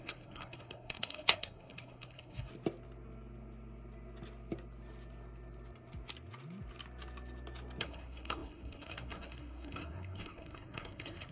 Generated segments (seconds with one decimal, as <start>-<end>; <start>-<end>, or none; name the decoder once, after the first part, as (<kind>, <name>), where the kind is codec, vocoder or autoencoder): 0.0-2.5 (codec, SNAC); 7.8-11.3